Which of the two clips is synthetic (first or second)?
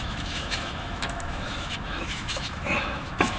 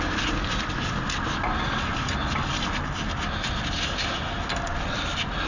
first